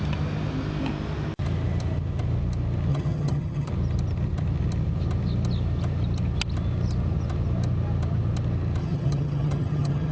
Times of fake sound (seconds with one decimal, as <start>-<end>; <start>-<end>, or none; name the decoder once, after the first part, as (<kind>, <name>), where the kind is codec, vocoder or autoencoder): 2.9-3.7 (vocoder, HiFi-GAN); 8.8-10.1